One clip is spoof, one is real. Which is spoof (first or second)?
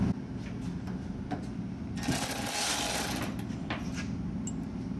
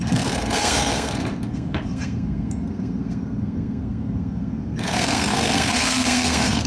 second